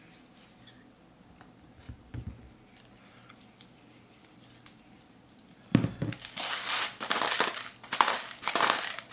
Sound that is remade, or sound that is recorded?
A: recorded